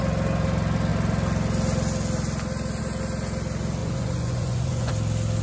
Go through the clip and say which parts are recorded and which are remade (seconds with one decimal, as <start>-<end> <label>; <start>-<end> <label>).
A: 0.0-3.8 recorded; 3.8-4.9 remade; 4.9-5.4 recorded